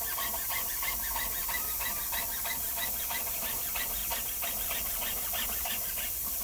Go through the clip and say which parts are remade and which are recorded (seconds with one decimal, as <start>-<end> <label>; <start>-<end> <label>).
0.0-4.0 remade; 4.0-4.7 recorded; 4.7-6.4 remade